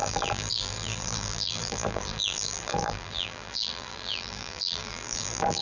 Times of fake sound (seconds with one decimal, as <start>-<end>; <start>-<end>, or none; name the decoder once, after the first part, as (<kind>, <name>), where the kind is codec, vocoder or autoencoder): 0.0-5.6 (vocoder, BigVGAN v2)